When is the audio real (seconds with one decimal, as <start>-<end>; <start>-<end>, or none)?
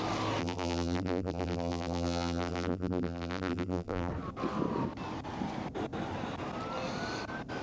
0.0-0.4; 4.1-7.6